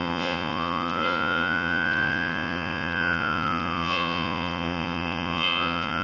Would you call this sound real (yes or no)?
no